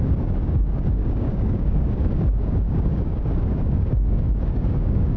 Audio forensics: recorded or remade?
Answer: remade